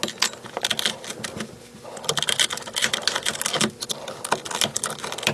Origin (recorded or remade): recorded